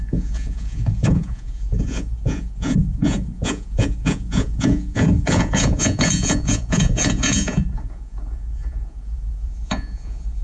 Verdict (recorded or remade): remade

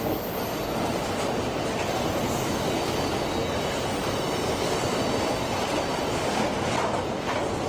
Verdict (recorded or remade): recorded